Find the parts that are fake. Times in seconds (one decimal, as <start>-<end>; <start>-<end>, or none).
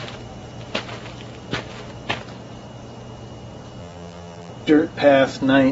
3.8-4.5